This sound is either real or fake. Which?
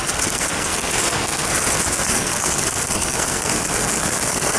fake